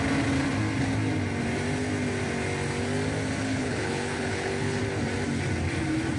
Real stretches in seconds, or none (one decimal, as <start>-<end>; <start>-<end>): 0.0-3.4; 4.8-6.2